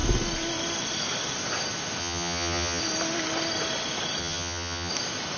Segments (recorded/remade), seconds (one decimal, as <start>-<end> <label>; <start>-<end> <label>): 0.0-2.0 recorded; 2.0-2.8 remade; 2.8-4.2 recorded; 4.2-4.9 remade; 4.9-5.4 recorded